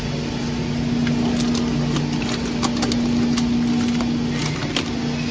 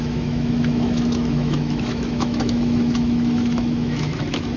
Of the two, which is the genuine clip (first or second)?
first